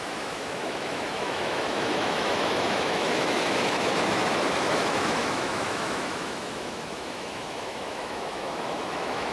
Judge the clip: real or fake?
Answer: fake